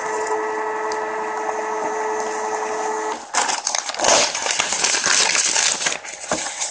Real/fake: real